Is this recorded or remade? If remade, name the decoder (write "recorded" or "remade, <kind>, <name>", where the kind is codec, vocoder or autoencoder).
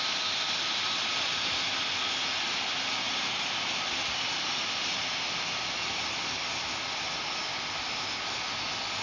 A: recorded